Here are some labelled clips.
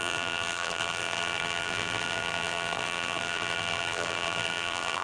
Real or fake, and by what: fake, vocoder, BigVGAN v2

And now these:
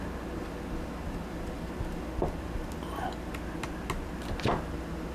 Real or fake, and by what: real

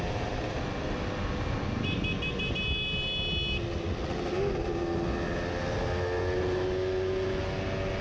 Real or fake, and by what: real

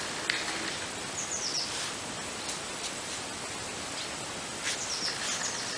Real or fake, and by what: real